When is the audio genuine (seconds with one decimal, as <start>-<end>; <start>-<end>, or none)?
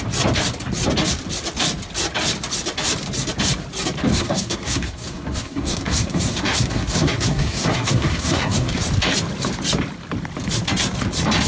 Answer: 0.0-4.1; 8.7-11.5